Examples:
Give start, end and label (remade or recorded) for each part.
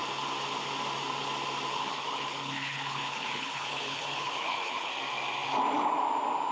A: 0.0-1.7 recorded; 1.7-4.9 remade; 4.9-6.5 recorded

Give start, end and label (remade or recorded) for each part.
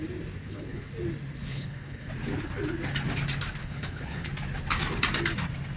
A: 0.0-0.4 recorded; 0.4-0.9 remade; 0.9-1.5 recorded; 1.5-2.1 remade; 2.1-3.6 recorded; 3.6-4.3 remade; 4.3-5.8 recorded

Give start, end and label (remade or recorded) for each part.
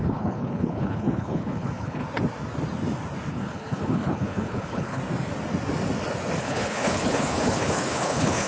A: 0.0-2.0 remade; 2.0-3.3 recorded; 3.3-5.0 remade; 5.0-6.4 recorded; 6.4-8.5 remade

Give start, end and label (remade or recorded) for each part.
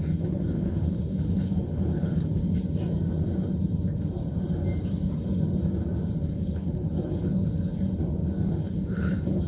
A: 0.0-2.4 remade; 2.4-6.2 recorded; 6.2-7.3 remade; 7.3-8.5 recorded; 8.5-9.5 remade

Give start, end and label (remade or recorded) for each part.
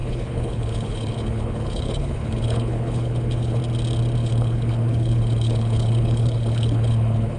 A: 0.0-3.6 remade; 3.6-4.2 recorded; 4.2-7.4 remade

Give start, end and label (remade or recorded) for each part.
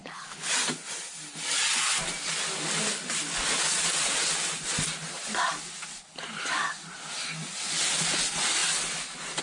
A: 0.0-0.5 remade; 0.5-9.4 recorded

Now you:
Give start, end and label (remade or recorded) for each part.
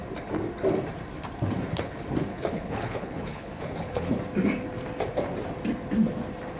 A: 0.0-2.3 recorded; 2.3-4.1 remade; 4.1-6.6 recorded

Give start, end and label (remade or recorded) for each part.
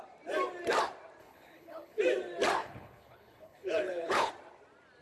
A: 0.0-1.2 recorded; 1.2-2.0 remade; 2.0-2.6 recorded; 2.6-4.3 remade; 4.3-5.0 recorded